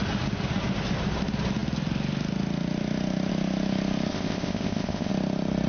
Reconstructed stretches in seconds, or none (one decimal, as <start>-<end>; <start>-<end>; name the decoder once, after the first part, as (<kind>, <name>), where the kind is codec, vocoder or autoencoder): 4.1-5.1 (codec, ZipCodec)